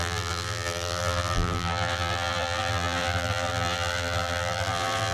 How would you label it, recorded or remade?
remade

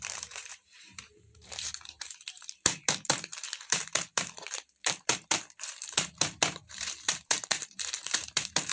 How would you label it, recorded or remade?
remade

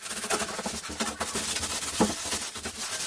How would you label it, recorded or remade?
recorded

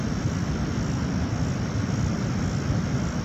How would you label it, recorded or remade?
recorded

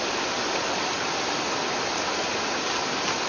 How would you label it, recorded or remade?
recorded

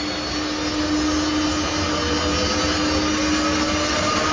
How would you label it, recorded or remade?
recorded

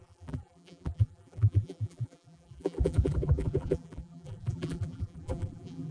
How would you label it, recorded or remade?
remade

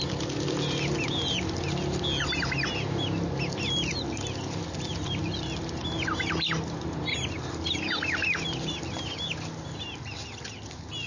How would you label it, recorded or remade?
recorded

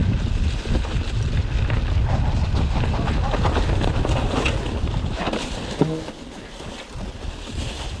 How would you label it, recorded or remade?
recorded